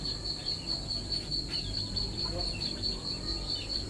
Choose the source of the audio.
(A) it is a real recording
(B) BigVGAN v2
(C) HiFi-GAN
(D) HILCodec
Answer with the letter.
B